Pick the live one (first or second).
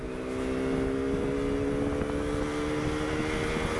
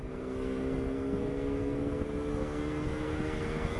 first